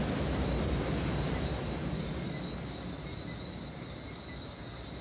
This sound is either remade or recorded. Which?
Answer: recorded